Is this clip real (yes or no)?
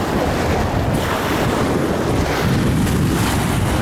yes